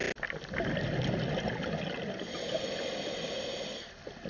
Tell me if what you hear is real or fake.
real